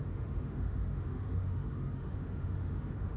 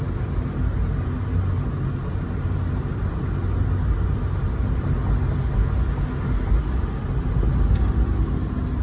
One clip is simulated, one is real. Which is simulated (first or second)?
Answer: first